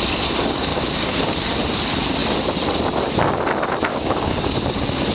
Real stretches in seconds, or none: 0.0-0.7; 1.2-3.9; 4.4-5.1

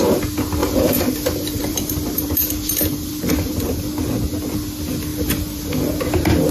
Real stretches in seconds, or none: 0.0-0.6; 3.8-5.1; 6.0-6.5

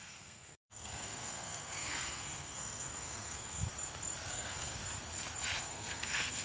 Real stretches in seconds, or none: 3.7-4.3; 4.8-5.6

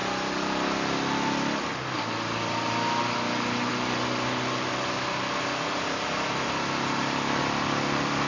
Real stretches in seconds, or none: 0.0-8.3

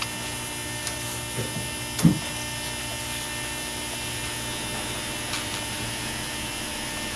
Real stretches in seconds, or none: 0.0-7.2